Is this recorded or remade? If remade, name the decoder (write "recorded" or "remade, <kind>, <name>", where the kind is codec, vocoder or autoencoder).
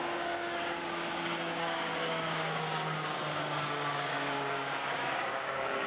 remade, codec, DAC